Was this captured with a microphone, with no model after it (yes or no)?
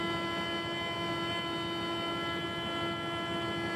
yes